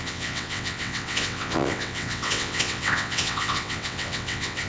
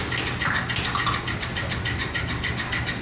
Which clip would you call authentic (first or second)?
second